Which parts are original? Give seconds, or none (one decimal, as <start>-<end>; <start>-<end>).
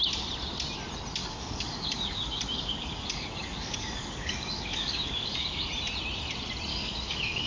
0.0-1.2; 5.7-6.7